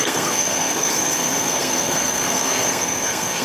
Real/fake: fake